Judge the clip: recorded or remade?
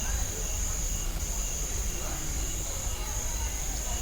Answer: recorded